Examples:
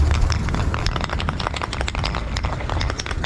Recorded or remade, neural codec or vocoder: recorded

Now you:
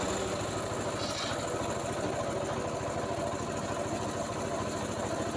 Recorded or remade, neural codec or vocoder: recorded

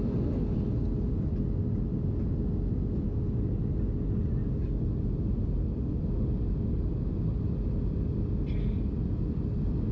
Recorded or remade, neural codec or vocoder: recorded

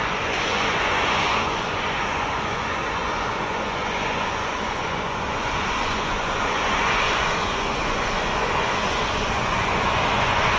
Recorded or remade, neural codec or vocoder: remade, vocoder, Vocos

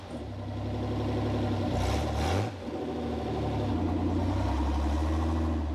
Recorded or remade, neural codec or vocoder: recorded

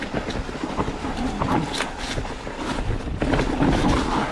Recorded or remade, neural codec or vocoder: recorded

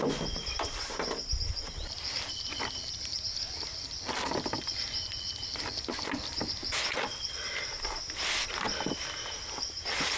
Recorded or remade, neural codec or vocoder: recorded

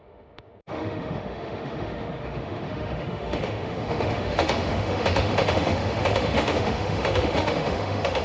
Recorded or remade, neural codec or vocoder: remade, autoencoder, DAC-VAE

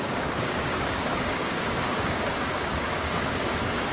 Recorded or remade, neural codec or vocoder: remade, codec, DAC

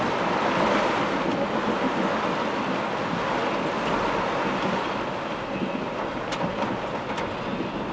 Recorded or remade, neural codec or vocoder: recorded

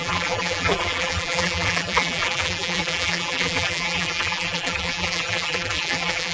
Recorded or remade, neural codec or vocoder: remade, vocoder, BigVGAN v2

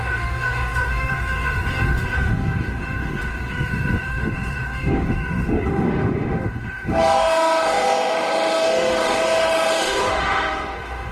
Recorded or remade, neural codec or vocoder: remade, autoencoder, DAC-VAE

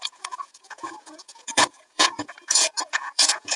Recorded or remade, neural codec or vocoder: remade, vocoder, Vocos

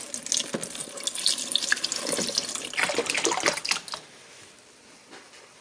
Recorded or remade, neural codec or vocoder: recorded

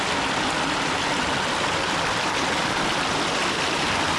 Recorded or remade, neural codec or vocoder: recorded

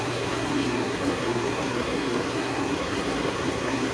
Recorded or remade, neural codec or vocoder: remade, codec, SNAC